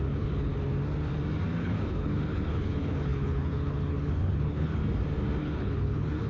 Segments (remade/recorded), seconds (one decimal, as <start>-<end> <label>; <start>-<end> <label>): 0.0-0.5 remade; 0.5-1.6 recorded; 1.6-4.8 remade; 4.8-5.4 recorded; 5.4-6.3 remade